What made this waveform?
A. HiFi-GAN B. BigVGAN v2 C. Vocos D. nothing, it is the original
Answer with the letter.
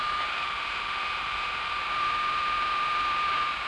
B